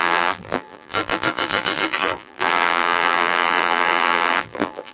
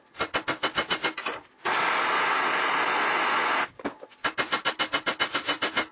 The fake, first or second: first